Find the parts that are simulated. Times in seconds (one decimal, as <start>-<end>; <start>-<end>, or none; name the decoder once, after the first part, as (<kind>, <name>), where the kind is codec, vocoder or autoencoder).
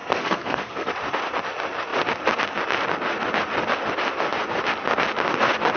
0.0-0.9 (codec, SNAC)